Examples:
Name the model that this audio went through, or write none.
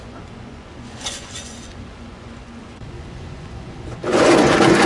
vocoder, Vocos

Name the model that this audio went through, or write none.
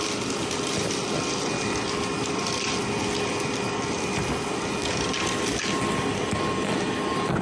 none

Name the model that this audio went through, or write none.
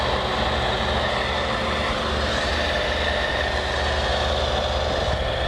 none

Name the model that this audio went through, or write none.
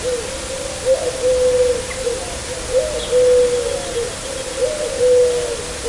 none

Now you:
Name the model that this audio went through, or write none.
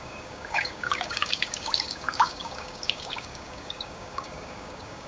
codec, DAC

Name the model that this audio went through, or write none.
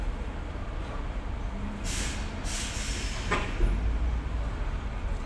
none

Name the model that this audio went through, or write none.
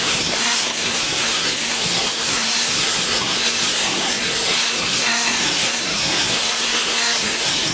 codec, SNAC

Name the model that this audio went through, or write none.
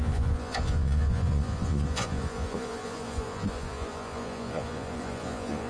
vocoder, Vocos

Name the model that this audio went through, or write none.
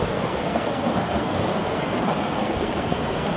codec, SNAC